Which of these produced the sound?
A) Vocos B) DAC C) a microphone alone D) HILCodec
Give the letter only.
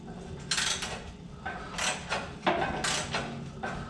C